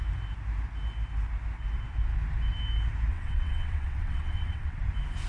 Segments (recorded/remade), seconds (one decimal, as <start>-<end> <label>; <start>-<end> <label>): 0.0-3.1 recorded; 3.1-4.8 remade; 4.8-5.3 recorded